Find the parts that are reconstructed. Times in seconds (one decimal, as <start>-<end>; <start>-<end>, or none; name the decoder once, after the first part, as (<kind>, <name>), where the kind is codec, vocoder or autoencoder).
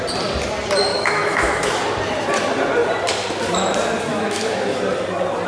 0.9-1.7 (autoencoder, DAC-VAE); 4.1-4.8